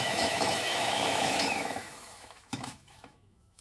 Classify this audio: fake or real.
fake